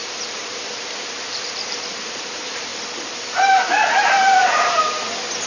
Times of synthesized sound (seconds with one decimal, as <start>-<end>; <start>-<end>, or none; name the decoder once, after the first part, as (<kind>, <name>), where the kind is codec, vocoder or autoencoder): 0.0-2.7 (vocoder, BigVGAN v2); 4.0-5.5